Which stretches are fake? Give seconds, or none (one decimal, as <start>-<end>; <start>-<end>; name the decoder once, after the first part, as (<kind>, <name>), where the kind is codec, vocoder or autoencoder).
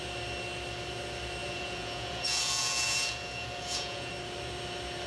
1.4-4.1 (vocoder, Vocos)